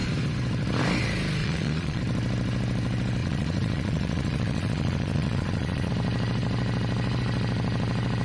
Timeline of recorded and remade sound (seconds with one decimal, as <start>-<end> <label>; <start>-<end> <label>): 0.0-1.4 recorded; 1.4-2.0 remade; 2.0-3.2 recorded; 3.2-5.9 remade; 5.9-8.2 recorded